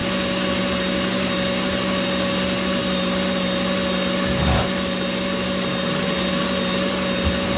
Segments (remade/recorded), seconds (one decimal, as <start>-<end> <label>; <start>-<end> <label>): 0.0-7.6 recorded